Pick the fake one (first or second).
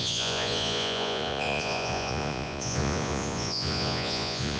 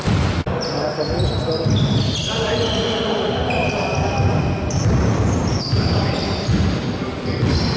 first